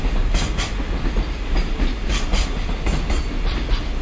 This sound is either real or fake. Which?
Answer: real